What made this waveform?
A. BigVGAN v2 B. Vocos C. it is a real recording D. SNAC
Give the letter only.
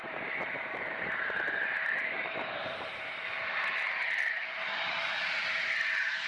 A